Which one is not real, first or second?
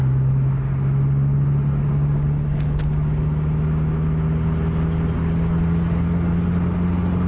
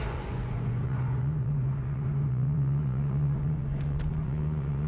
second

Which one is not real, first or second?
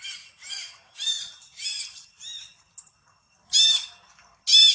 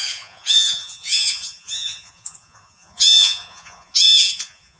second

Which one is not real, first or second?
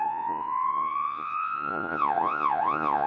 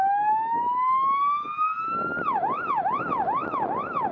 first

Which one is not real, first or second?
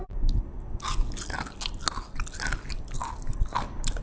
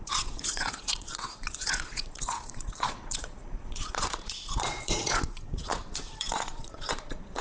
second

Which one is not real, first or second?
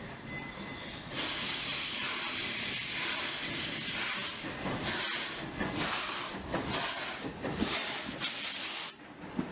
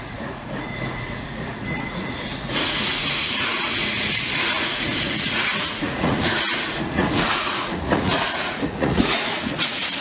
second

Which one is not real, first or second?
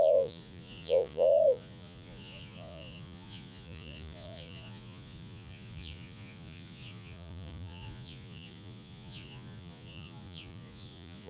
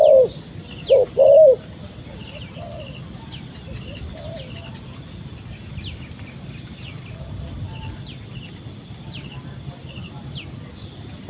first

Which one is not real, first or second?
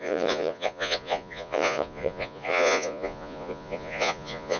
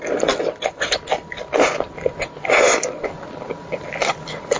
first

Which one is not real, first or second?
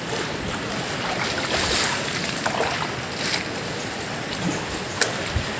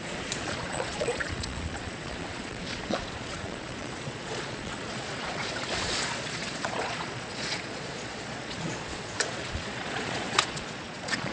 second